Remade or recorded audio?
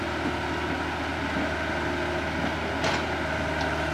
recorded